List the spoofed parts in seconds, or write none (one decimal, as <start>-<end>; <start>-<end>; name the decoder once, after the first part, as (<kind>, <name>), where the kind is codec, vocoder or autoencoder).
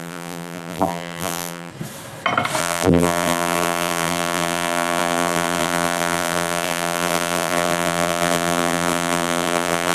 0.0-1.7 (vocoder, BigVGAN v2); 2.6-9.9